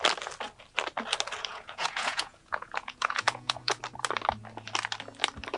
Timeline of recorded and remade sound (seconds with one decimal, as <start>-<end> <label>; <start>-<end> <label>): 0.0-1.5 recorded; 1.5-3.8 remade; 3.8-5.6 recorded